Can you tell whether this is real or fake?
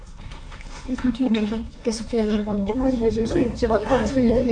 fake